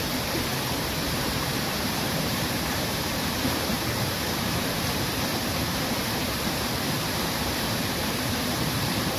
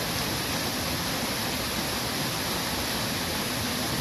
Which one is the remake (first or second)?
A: first